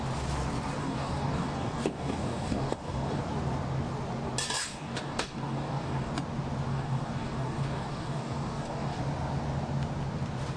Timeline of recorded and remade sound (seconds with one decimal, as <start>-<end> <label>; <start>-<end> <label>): 0.0-0.8 recorded; 0.8-3.2 remade; 3.2-4.6 recorded; 4.6-6.1 remade; 6.1-6.7 recorded; 6.7-9.0 remade; 9.0-10.6 recorded